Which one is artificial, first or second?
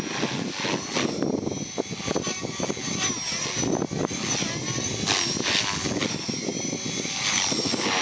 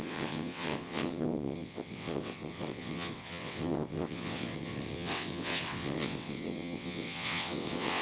second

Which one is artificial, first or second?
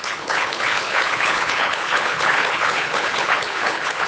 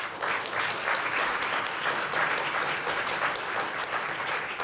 first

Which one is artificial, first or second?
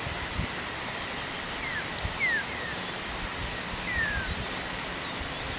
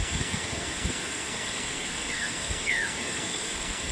second